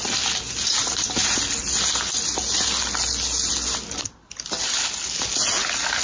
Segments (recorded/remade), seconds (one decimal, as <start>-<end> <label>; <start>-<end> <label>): 0.0-6.0 recorded